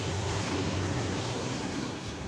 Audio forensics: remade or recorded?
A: remade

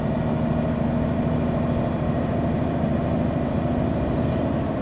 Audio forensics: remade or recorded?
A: recorded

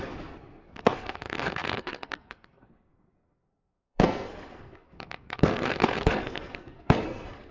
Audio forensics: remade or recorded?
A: remade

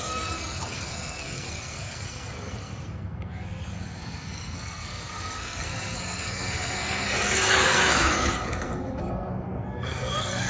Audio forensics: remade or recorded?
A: remade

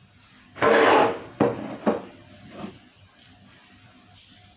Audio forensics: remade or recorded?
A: recorded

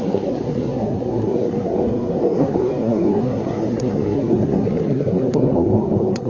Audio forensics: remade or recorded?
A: remade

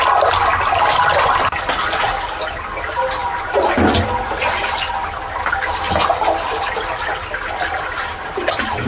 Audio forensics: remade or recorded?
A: recorded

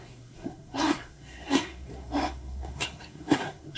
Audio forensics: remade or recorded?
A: remade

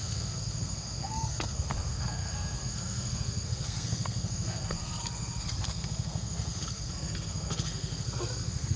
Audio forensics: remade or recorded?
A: remade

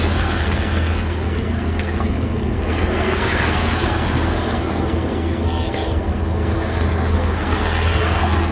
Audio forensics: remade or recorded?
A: remade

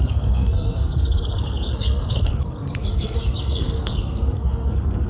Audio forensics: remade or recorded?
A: remade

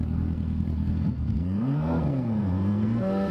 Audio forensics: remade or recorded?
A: remade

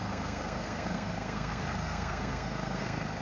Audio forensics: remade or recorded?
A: remade